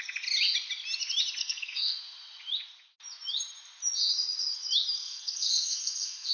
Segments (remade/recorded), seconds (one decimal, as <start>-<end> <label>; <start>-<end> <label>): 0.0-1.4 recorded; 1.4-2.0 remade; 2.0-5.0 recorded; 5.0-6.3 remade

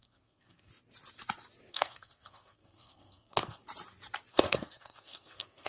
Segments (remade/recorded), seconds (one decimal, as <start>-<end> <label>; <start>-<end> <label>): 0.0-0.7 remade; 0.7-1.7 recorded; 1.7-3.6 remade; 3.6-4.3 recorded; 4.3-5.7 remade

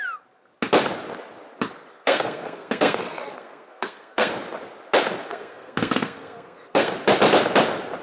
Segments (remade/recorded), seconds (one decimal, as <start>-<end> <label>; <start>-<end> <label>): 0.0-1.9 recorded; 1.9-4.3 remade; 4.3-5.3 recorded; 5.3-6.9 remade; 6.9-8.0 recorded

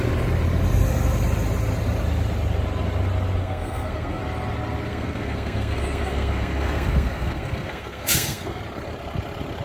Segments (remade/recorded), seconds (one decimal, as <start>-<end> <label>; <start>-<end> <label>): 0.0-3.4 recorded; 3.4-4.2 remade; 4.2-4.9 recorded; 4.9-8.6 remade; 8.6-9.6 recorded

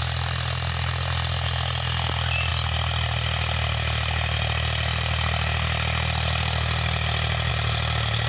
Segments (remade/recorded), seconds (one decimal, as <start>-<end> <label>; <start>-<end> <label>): 0.0-8.3 recorded

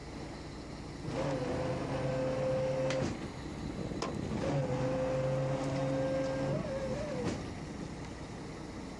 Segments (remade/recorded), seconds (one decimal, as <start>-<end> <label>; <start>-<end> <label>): 0.0-9.0 recorded

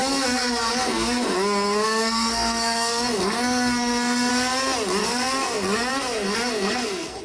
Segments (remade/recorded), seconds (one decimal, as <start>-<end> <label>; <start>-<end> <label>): 0.0-4.3 remade; 4.3-5.0 recorded; 5.0-7.2 remade

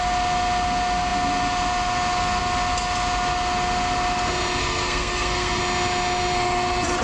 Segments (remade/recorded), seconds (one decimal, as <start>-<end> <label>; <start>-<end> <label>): 0.0-4.6 recorded; 4.6-5.6 remade; 5.6-7.0 recorded